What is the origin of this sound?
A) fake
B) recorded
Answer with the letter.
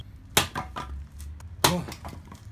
B